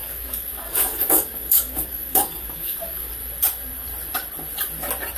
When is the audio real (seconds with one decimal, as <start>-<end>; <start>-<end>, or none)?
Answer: 3.1-5.2